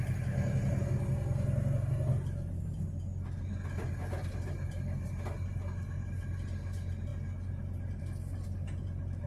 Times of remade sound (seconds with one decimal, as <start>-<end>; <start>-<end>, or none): none